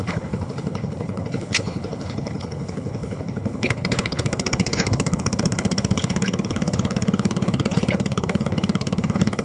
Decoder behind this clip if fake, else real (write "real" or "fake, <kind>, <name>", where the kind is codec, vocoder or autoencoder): fake, codec, HILCodec